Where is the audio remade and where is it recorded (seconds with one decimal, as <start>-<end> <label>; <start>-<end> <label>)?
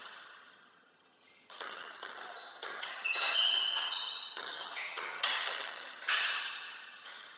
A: 0.0-7.4 remade